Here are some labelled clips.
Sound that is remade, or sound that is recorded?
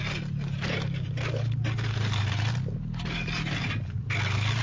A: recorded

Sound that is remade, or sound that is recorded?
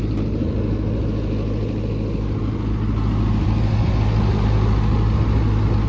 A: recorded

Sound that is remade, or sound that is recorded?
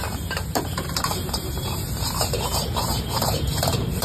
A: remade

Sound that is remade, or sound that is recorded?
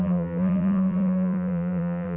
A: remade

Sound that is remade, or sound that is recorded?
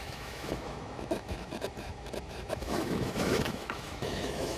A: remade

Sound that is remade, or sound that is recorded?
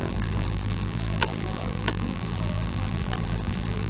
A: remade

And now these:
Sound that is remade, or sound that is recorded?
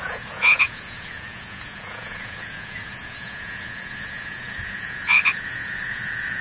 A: remade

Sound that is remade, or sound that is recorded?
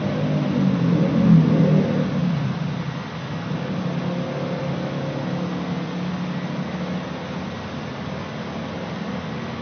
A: recorded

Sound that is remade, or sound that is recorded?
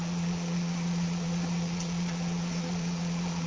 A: remade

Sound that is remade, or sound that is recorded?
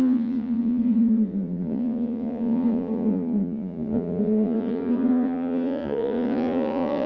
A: remade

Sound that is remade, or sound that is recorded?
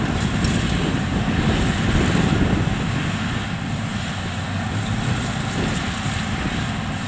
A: recorded